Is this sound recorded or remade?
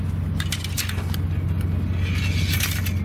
recorded